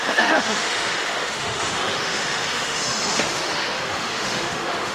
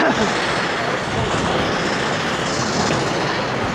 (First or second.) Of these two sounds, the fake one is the first